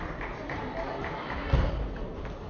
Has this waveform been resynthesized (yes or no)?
no